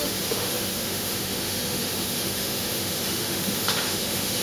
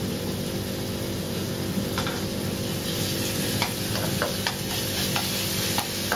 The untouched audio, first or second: second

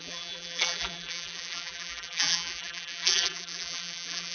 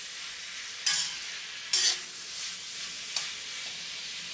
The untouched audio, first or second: second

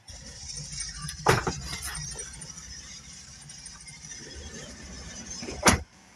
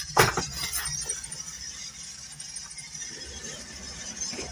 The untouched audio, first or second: second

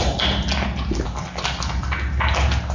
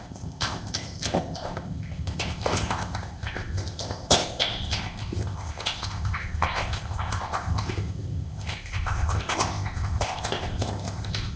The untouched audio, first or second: first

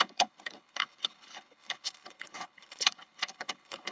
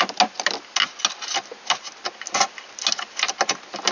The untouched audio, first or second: second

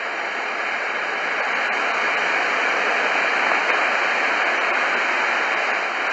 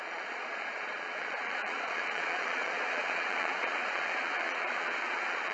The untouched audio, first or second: first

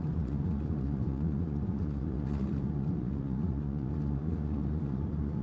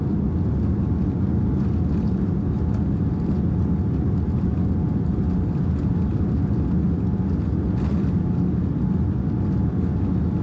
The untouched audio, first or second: second